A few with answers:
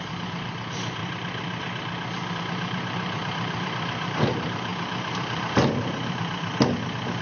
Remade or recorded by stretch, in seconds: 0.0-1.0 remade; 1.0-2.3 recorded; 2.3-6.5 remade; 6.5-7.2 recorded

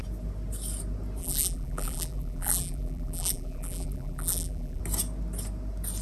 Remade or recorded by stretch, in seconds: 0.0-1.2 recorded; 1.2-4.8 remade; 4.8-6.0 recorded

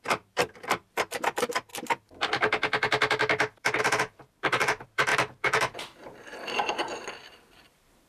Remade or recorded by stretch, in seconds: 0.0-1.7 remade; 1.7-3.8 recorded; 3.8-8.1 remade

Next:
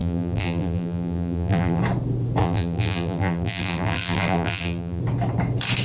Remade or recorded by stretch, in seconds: 0.0-1.8 remade; 1.8-2.4 recorded; 2.4-5.0 remade; 5.0-5.8 recorded

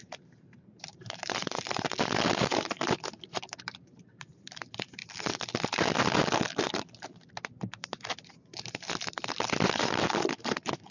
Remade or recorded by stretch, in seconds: 0.0-5.0 remade; 5.0-9.7 recorded; 9.7-10.9 remade

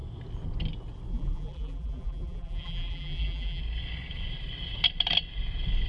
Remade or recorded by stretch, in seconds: 0.0-1.1 recorded; 1.1-3.6 remade; 3.6-5.9 recorded

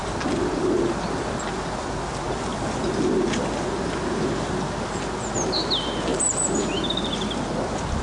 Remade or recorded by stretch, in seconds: 0.0-1.6 remade; 1.6-6.1 recorded; 6.1-6.6 remade; 6.6-8.0 recorded

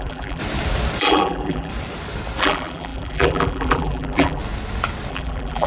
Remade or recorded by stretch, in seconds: 0.0-0.4 remade; 0.4-1.0 recorded; 1.0-1.7 remade; 1.7-2.4 recorded; 2.4-4.4 remade; 4.4-5.1 recorded; 5.1-5.7 remade